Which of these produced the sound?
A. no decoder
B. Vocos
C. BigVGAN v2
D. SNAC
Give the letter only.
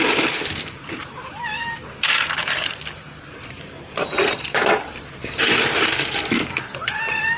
C